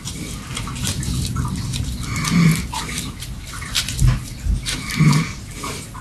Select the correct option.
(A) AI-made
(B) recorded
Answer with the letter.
B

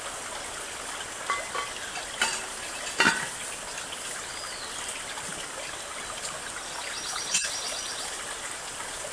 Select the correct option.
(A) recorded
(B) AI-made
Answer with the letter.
A